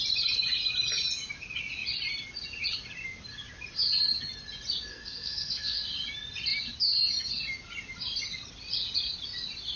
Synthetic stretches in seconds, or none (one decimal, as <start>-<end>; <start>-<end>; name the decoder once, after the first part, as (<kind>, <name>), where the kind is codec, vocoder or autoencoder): 4.9-5.8 (codec, SNAC)